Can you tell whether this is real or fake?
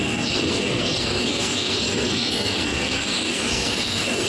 fake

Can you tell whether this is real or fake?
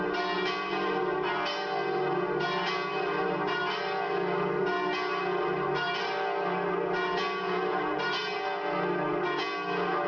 real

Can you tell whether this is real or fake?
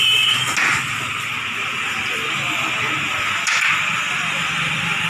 real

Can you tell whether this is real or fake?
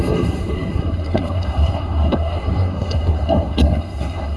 fake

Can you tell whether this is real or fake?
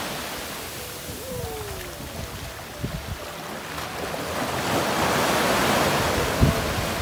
real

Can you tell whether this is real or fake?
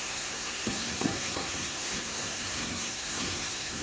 fake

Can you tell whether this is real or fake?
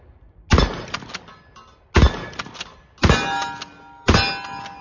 real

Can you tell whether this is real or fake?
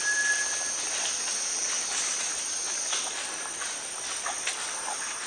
real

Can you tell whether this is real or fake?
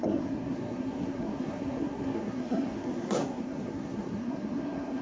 fake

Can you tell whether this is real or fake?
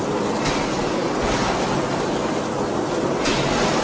real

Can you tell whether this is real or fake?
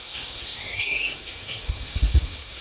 fake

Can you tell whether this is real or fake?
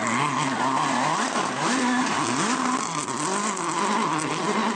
real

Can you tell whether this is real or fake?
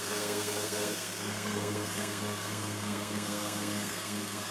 fake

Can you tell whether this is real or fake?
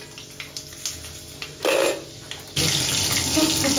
real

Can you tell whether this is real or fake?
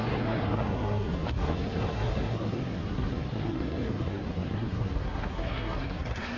fake